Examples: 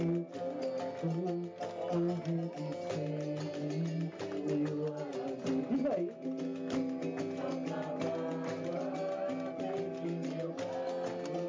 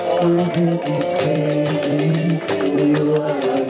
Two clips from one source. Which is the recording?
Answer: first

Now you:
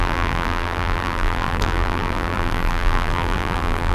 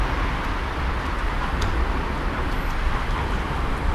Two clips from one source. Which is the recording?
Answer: second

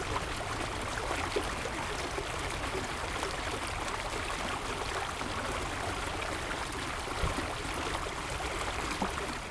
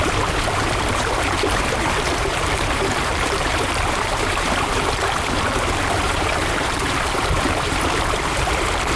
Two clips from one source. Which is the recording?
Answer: first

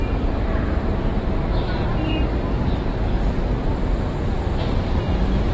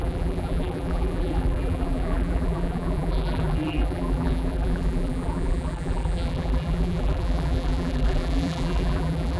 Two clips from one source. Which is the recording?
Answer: first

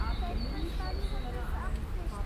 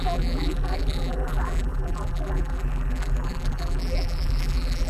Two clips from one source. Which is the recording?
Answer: first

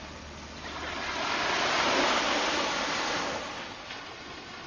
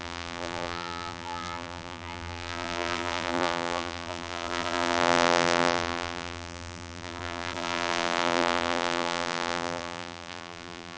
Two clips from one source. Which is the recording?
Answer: first